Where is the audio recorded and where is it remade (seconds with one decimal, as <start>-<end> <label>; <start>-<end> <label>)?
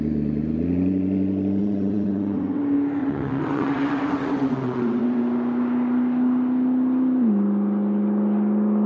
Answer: 0.0-1.6 recorded; 1.6-2.6 remade; 2.6-3.0 recorded; 3.0-5.2 remade; 5.2-8.9 recorded